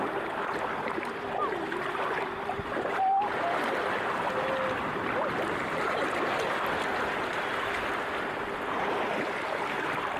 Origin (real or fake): real